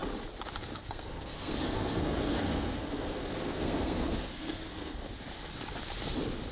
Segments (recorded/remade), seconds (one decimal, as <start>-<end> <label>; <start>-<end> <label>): 0.0-0.8 recorded; 0.8-5.0 remade; 5.0-6.5 recorded